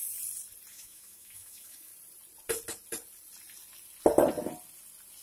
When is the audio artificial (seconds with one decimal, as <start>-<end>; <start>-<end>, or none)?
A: 0.7-1.9